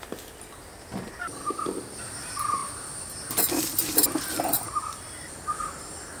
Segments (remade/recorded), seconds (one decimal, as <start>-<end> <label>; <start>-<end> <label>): 0.0-0.7 remade; 0.7-1.2 recorded; 1.2-6.2 remade